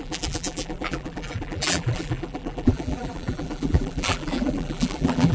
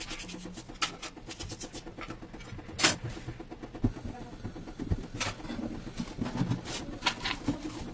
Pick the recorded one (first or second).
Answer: second